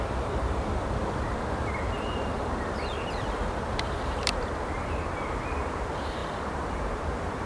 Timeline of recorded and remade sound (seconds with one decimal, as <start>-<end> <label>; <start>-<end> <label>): 0.0-7.5 remade